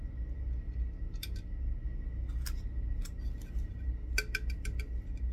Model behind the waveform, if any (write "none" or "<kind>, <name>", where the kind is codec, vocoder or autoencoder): none